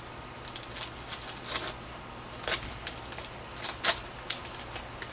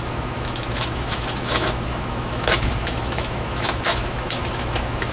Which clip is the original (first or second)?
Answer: first